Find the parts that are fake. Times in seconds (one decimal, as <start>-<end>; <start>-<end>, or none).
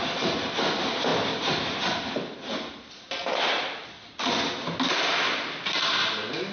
none